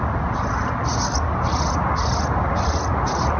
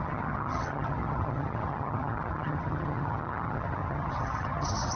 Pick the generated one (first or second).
second